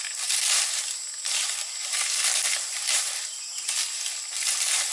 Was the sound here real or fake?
real